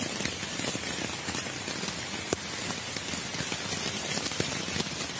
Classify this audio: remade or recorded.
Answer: recorded